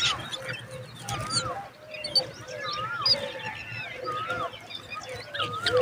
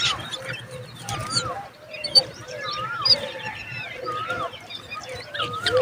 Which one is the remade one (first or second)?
second